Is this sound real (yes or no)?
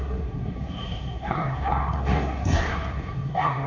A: no